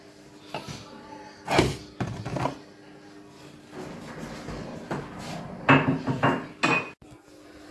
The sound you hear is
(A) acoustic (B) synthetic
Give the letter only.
A